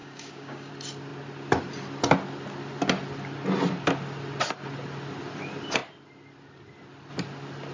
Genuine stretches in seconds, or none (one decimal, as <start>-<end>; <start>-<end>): 0.7-7.7